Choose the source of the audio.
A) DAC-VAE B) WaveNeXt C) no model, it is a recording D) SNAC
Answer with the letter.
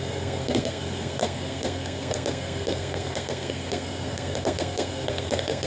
D